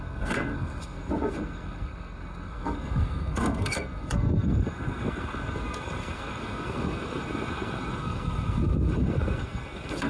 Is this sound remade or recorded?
remade